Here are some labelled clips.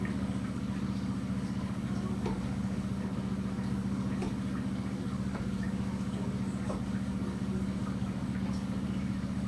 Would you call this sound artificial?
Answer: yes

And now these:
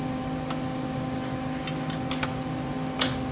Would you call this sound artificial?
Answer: no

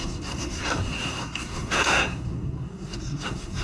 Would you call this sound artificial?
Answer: yes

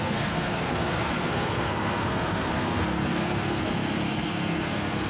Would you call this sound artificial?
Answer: yes